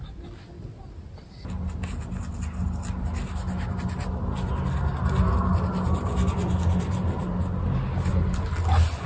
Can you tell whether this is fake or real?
real